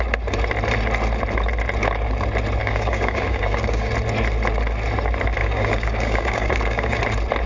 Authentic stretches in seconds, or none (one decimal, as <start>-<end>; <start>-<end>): 0.0-2.6; 3.9-5.4; 7.0-7.5